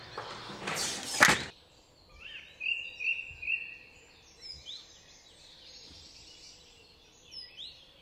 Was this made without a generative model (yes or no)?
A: yes